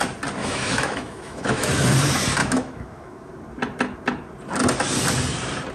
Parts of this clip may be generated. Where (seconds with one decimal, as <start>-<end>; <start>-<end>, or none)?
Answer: 0.4-1.7; 2.4-3.3